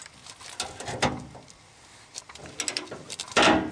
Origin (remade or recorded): recorded